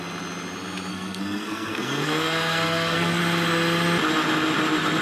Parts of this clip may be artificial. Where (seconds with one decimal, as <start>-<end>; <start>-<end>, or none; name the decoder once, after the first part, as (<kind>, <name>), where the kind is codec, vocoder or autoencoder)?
0.9-3.2 (codec, SNAC)